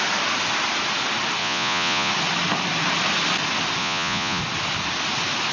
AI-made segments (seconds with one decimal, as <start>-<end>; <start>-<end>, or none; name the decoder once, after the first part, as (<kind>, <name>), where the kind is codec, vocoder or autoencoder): 1.4-2.1 (vocoder, Vocos); 3.8-4.4